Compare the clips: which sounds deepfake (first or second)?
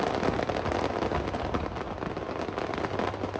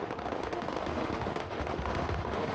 second